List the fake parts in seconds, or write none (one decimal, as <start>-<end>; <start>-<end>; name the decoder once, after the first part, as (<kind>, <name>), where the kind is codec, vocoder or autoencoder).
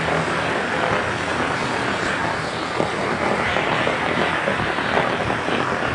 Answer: none